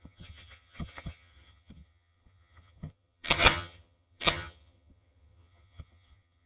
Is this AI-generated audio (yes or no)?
yes